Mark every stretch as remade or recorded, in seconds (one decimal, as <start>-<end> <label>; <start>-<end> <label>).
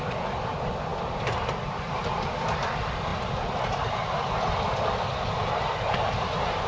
0.0-3.1 recorded; 3.1-6.7 remade